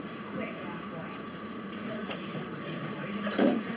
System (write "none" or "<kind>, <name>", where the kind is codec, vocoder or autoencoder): vocoder, Vocos